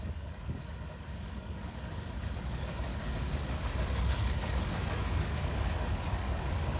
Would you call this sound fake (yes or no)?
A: yes